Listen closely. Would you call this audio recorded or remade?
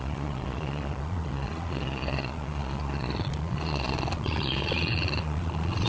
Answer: remade